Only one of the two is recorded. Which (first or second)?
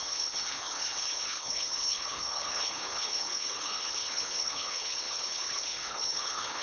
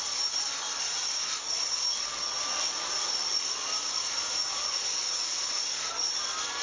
second